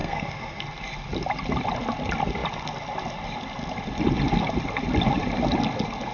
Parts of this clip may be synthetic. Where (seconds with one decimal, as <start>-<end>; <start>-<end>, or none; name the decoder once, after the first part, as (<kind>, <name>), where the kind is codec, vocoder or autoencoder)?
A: 0.0-0.6 (codec, SNAC)

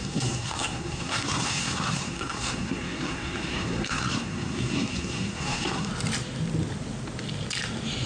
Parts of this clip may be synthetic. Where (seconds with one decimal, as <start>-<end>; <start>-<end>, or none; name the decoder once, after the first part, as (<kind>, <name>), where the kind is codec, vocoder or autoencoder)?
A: 0.0-5.9 (codec, SNAC)

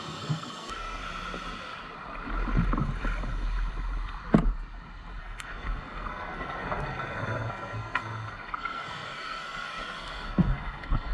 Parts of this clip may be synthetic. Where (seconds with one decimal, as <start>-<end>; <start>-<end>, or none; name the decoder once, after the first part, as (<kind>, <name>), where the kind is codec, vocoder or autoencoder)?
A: 0.0-1.0 (codec, SNAC); 5.2-11.1

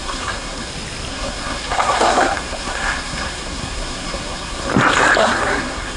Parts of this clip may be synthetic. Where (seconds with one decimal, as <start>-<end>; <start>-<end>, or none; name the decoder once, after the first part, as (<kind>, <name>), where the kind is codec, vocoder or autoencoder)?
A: 0.0-0.7 (codec, SNAC); 1.1-4.7; 5.2-6.0

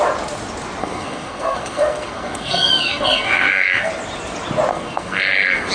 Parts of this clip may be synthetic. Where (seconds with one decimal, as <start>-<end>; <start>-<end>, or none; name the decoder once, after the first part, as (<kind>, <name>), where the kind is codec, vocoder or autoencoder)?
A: 0.8-3.9 (codec, SNAC); 4.7-5.7